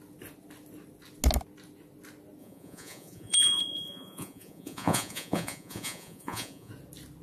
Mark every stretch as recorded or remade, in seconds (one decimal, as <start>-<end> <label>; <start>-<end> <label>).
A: 0.0-2.4 recorded; 2.4-6.7 remade; 6.7-7.2 recorded